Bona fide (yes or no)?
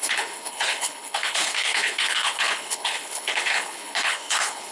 no